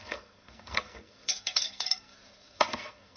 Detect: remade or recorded remade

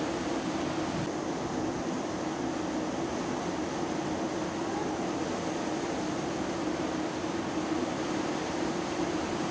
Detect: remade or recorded recorded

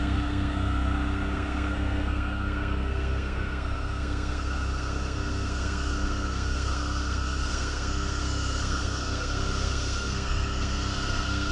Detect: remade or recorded remade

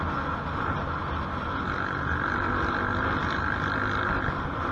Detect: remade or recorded recorded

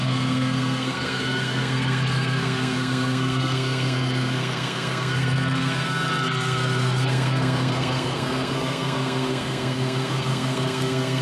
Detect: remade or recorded remade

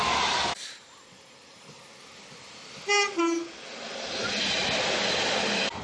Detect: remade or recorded recorded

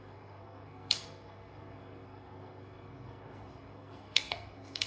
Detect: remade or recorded remade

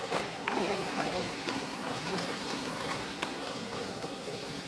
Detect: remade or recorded remade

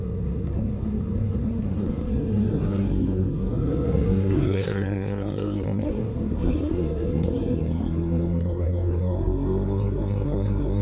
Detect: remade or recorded remade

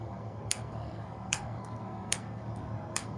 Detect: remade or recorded remade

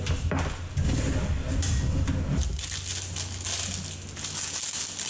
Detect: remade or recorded recorded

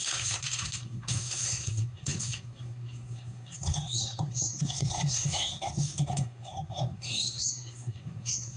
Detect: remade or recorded remade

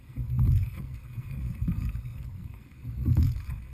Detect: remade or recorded remade